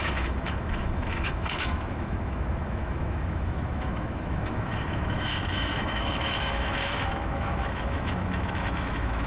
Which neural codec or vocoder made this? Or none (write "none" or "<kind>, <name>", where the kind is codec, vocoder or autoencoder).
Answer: autoencoder, DAC-VAE